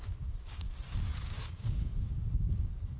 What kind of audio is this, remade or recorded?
remade